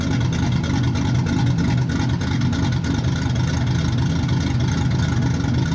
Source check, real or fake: real